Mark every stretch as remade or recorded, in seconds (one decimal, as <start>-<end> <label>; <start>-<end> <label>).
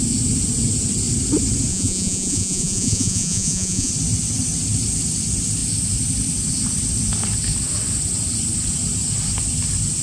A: 0.0-1.7 recorded; 1.7-3.9 remade; 3.9-10.0 recorded